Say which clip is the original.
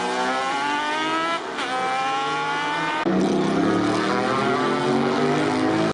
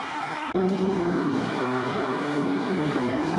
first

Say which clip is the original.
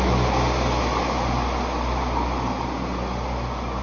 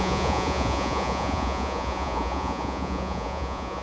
first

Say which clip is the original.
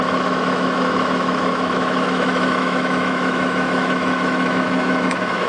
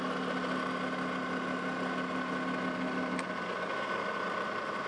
second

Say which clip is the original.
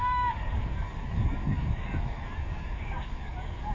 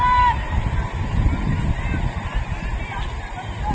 second